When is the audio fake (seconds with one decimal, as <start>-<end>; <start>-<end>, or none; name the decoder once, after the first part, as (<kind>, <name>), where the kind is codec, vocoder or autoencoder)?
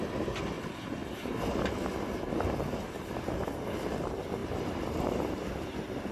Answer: 4.4-5.6 (vocoder, BigVGAN v2)